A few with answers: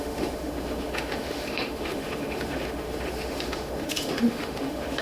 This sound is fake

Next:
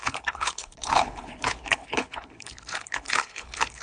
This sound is fake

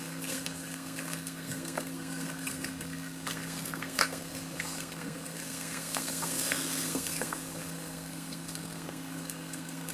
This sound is fake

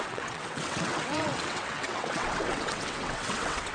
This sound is fake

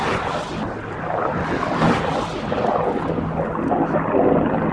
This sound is real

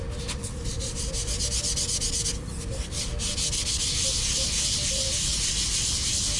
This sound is real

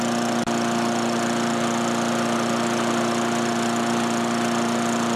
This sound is real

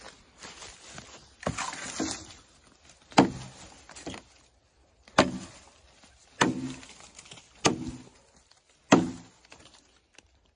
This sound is real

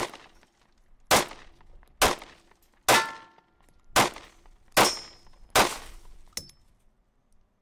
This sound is real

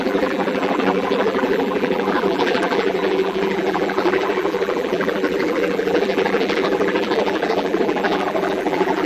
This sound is fake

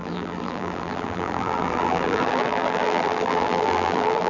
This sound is fake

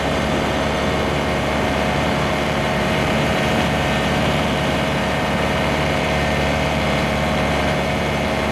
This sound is fake